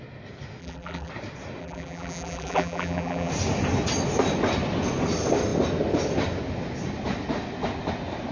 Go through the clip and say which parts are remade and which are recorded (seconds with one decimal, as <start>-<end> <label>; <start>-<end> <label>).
0.0-0.6 recorded; 0.6-1.1 remade; 1.1-1.6 recorded; 1.6-3.3 remade; 3.3-8.3 recorded